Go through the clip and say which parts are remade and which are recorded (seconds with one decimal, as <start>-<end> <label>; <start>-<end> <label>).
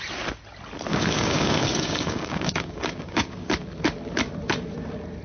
0.0-0.9 recorded; 0.9-3.5 remade; 3.5-5.2 recorded